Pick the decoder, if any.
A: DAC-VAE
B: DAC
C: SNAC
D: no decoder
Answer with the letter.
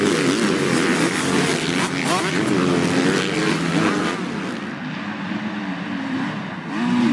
D